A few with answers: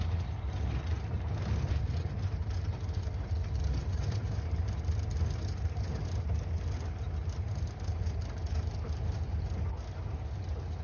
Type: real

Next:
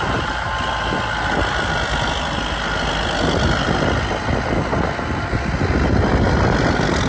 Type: real